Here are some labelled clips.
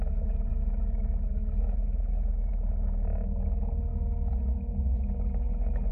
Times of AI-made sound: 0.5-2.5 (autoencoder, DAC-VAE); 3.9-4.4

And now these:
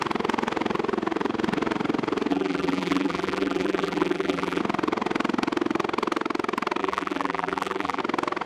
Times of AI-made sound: 2.3-4.6 (vocoder, BigVGAN v2); 6.8-8.0

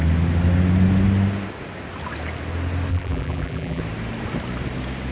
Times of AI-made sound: 2.9-3.8 (vocoder, BigVGAN v2)

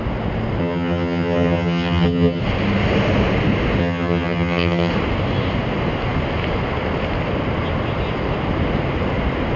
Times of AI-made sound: 0.6-2.4 (vocoder, HiFi-GAN); 3.8-4.9

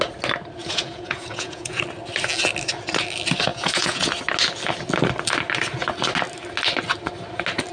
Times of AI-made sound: 0.6-1.8 (vocoder, Vocos); 3.5-4.1

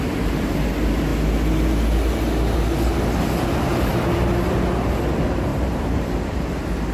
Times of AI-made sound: 5.5-6.4 (vocoder, BigVGAN v2)